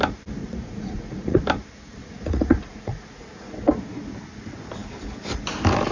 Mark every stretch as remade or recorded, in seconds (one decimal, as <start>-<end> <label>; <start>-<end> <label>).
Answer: 0.0-0.4 recorded; 0.4-1.4 remade; 1.4-2.0 recorded; 2.0-3.9 remade; 3.9-5.9 recorded